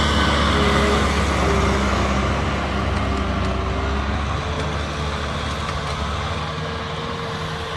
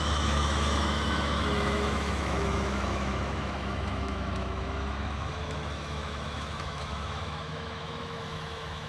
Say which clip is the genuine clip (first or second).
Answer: first